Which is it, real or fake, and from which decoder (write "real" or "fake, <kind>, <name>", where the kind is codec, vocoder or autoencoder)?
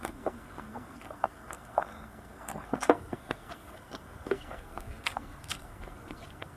fake, codec, SNAC